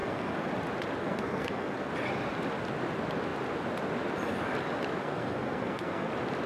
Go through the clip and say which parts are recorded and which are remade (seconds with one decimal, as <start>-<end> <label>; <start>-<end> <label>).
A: 0.0-0.5 remade; 0.5-1.0 recorded; 1.0-1.9 remade; 1.9-5.0 recorded; 5.0-6.1 remade; 6.1-6.5 recorded